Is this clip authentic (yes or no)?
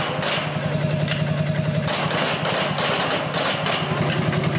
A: yes